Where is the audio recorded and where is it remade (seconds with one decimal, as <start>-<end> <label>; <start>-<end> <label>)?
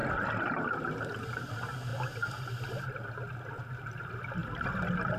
0.0-5.2 recorded